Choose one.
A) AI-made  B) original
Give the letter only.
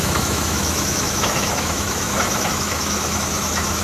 A